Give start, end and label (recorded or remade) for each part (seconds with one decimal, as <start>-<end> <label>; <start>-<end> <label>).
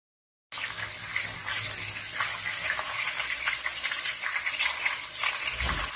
0.0-2.3 recorded; 2.3-2.9 remade; 2.9-6.0 recorded